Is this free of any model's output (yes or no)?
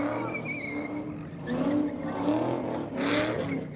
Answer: yes